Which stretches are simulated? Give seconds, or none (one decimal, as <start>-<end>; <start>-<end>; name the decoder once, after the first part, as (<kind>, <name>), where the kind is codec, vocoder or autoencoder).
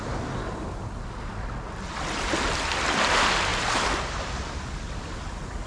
none